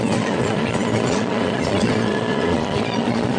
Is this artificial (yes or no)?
yes